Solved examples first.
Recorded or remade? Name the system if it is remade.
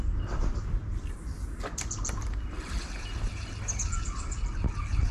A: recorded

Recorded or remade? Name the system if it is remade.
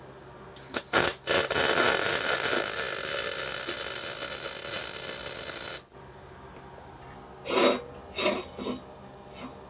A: recorded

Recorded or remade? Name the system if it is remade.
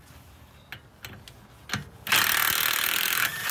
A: recorded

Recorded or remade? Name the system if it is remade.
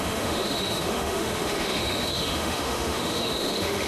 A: remade, autoencoder, DAC-VAE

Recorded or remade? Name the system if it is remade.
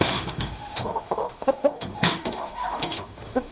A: remade, autoencoder, DAC-VAE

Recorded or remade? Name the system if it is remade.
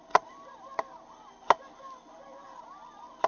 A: recorded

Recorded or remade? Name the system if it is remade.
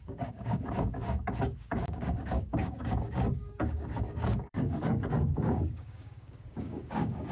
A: remade, codec, DAC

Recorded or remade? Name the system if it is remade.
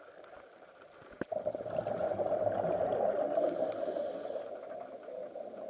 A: recorded